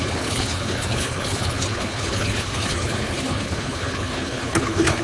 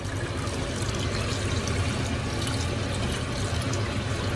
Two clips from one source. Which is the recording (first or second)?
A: second